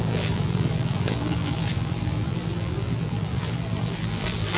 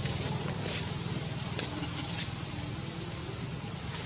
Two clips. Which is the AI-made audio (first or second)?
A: first